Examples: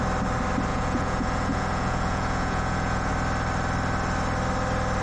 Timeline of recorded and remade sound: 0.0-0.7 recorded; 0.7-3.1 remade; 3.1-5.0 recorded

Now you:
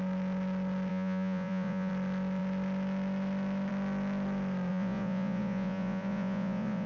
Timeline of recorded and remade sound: 0.0-0.9 recorded; 0.9-1.9 remade; 1.9-4.7 recorded; 4.7-6.9 remade

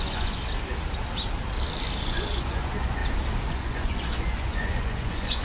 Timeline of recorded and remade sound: 0.0-0.4 remade; 0.4-2.0 recorded; 2.0-3.0 remade; 3.0-3.5 recorded; 3.5-5.4 remade

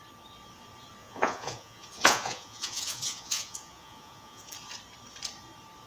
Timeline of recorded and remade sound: 0.0-1.0 recorded; 1.0-4.5 remade; 4.5-5.9 recorded

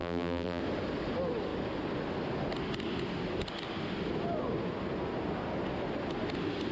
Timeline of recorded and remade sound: 0.0-0.6 remade; 0.6-6.7 recorded

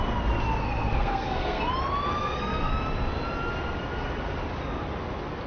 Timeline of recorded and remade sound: 0.0-0.6 recorded; 0.6-1.7 remade; 1.7-2.2 recorded; 2.2-2.7 remade; 2.7-5.5 recorded

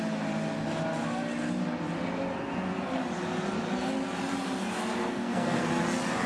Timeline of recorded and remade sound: 0.0-5.0 recorded; 5.0-5.7 remade; 5.7-6.3 recorded

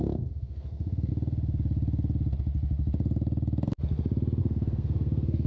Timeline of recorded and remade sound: 0.0-1.1 remade; 1.1-4.4 recorded; 4.4-5.5 remade